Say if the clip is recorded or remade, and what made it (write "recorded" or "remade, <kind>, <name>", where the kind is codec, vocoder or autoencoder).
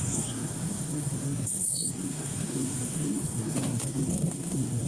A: remade, codec, SNAC